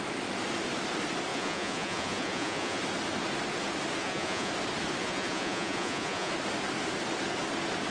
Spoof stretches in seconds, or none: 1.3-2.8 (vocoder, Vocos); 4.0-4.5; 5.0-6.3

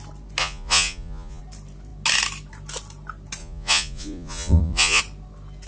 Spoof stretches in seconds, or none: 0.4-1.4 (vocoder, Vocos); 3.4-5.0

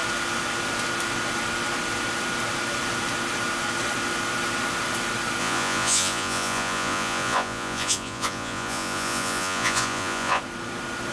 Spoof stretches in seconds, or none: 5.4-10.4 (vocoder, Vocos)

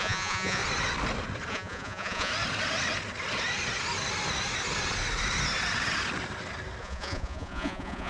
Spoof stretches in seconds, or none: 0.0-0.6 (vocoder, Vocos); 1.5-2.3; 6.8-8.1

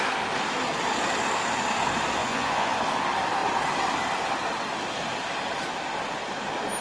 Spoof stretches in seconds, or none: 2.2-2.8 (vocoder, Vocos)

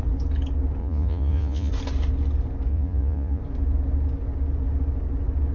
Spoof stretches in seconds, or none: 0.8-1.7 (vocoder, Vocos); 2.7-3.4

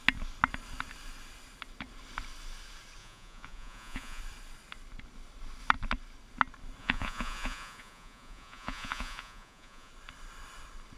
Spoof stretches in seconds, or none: 3.0-4.2 (vocoder, Vocos); 6.8-9.9

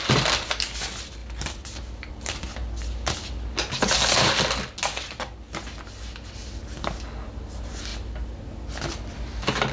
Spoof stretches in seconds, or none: none